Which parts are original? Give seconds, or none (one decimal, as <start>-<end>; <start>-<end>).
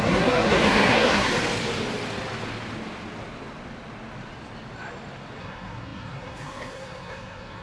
1.3-5.4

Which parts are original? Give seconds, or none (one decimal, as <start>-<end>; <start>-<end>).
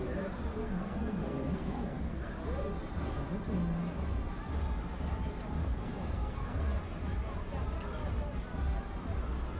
0.0-0.6; 2.3-5.6; 6.8-9.6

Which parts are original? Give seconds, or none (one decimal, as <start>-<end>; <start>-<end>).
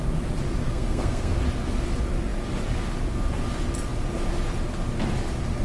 0.0-0.6; 1.4-5.6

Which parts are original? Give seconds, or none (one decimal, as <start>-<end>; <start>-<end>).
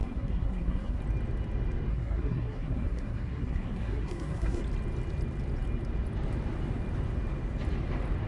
1.0-1.9; 4.6-8.3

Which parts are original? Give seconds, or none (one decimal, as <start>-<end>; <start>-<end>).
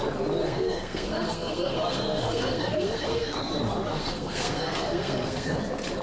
0.0-0.4; 3.5-3.9; 5.6-6.0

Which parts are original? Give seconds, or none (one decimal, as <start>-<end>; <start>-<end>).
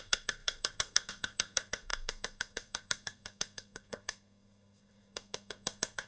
none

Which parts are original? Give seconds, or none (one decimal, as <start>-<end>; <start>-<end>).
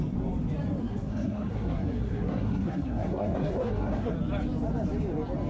0.0-0.8; 4.1-5.5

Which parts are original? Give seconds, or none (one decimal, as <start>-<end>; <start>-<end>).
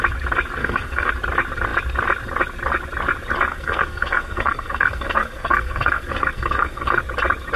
0.0-0.6; 1.1-3.5; 7.0-7.6